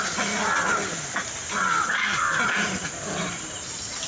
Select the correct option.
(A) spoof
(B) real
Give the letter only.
B